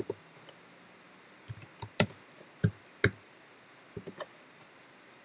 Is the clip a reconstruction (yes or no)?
no